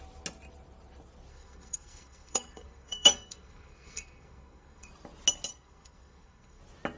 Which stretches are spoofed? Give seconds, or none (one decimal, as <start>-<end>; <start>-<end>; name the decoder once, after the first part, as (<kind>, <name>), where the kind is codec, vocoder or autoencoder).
1.3-4.9 (codec, SNAC); 5.5-6.6